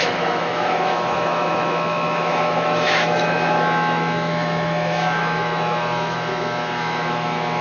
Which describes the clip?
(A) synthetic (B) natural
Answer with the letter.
A